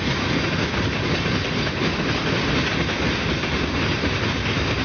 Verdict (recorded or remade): recorded